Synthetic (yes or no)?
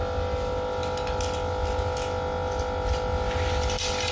no